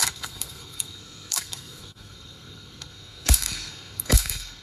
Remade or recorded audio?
remade